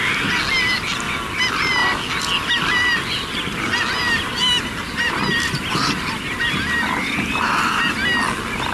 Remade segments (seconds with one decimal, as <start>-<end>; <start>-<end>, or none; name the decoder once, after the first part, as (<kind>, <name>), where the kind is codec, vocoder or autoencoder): none